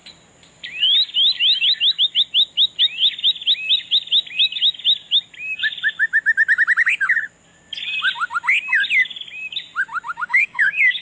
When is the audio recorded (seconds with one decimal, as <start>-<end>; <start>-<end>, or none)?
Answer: 0.0-10.2

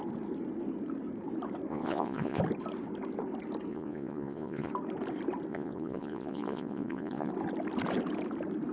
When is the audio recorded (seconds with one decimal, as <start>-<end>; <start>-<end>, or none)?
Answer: 0.0-1.7; 2.4-3.7; 4.7-5.5; 7.3-8.7

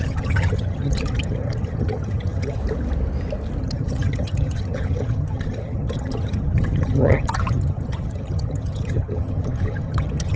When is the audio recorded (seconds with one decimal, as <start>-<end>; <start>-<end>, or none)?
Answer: 2.6-3.6

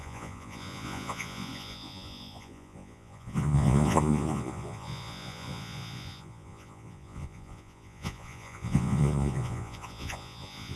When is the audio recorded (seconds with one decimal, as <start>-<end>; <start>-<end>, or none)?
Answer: none

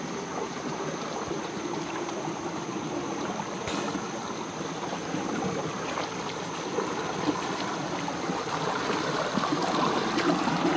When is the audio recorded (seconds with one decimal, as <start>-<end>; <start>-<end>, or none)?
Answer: 0.0-10.8

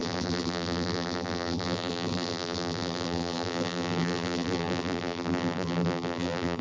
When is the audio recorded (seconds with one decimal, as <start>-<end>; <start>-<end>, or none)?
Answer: none